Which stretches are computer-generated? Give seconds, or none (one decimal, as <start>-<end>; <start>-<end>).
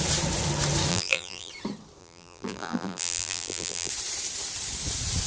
0.9-1.5; 2.0-3.9